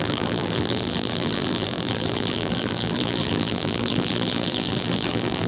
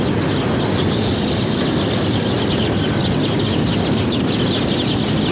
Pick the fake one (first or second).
first